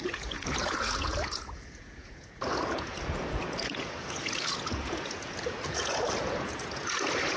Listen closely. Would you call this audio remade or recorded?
remade